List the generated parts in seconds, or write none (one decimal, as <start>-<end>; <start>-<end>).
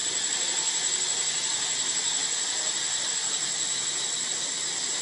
none